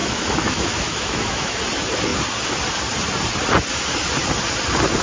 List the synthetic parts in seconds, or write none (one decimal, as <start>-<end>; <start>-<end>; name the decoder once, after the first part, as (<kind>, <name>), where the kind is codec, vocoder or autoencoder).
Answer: 0.0-1.6 (autoencoder, DAC-VAE)